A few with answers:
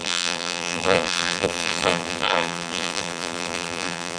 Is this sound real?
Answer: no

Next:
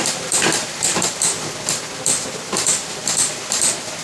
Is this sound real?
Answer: no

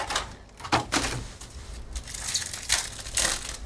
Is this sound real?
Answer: yes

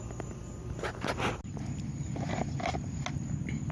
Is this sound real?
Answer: yes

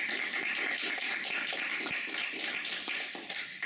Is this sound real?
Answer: yes